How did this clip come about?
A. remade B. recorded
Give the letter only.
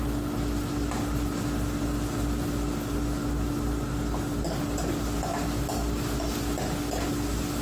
B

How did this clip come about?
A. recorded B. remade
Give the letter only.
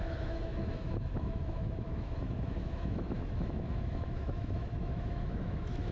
B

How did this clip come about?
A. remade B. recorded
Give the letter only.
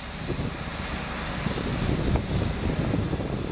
B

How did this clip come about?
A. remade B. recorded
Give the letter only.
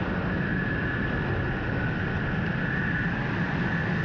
B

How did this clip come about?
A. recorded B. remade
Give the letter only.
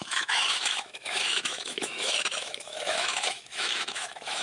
B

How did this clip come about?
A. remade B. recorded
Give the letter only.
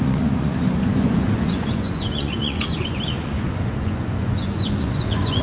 A